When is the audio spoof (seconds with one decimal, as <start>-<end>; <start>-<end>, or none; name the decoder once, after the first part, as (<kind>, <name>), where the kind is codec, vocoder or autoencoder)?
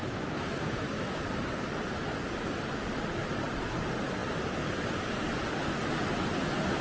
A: 0.0-1.2 (autoencoder, DAC-VAE)